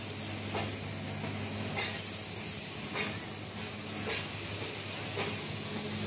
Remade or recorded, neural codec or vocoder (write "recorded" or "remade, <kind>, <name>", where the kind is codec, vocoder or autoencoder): recorded